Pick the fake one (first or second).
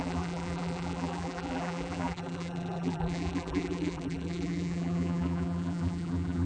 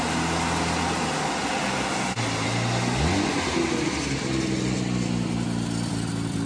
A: first